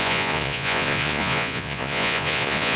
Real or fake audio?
fake